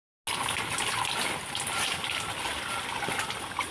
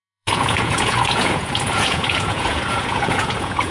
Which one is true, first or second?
first